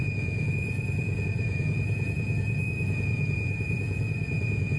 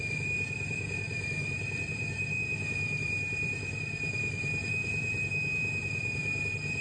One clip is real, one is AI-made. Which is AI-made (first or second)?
first